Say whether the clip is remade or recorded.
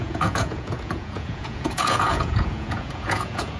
remade